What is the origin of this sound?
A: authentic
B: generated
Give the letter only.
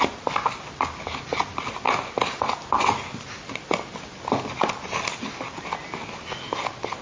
A